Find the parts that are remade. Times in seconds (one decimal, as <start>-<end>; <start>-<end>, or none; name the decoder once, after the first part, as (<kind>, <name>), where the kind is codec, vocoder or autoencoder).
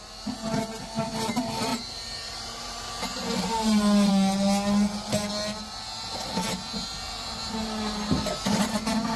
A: 1.7-4.1 (vocoder, BigVGAN v2)